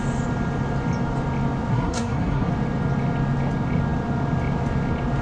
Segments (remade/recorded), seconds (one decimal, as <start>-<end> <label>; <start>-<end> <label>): 0.0-1.7 recorded; 1.7-2.5 remade; 2.5-5.2 recorded